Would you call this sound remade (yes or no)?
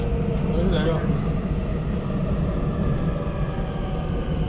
no